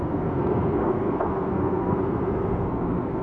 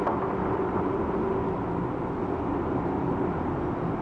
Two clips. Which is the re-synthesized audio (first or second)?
first